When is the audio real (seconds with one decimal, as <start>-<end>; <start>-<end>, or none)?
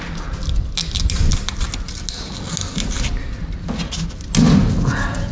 0.0-5.3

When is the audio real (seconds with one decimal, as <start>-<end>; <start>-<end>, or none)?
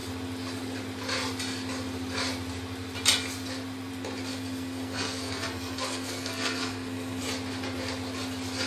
0.0-4.3; 7.2-8.7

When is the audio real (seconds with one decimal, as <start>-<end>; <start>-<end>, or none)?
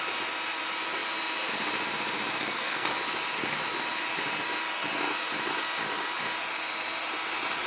0.0-2.4; 2.9-7.7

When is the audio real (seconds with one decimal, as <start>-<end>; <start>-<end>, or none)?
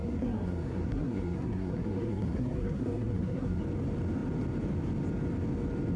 3.6-6.0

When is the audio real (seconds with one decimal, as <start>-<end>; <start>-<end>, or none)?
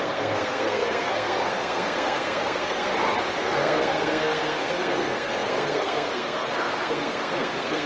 2.9-3.4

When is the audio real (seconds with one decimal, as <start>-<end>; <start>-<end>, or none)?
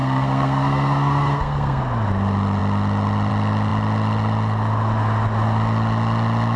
1.8-6.6